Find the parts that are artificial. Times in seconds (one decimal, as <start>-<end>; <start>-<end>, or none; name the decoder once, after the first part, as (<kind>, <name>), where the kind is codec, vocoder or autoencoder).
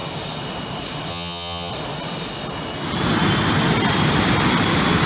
1.1-1.7 (vocoder, HiFi-GAN)